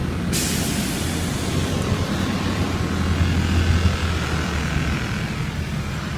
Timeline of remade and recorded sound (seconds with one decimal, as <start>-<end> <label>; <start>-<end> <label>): 0.0-6.2 recorded